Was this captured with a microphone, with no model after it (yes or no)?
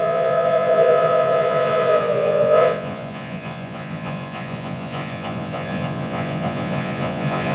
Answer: no